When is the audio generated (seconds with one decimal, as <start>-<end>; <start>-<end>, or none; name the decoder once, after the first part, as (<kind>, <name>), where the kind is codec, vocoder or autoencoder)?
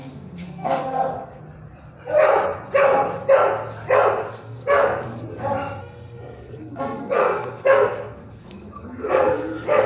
0.0-1.4 (codec, SNAC); 4.2-5.2; 5.8-9.9